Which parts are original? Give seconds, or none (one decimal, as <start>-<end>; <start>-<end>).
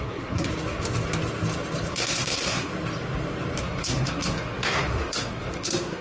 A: 0.5-1.9; 2.7-3.6